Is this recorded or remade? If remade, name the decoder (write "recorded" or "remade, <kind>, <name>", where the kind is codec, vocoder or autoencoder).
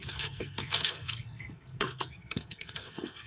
remade, codec, SNAC